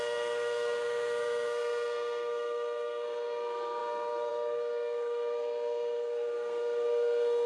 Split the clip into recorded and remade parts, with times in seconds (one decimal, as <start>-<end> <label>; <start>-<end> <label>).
0.0-7.5 remade